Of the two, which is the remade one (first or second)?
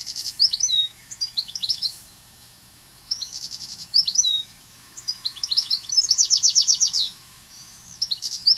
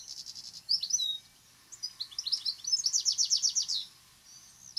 first